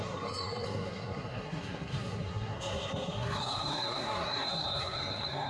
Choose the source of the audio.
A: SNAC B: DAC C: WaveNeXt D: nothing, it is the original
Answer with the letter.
A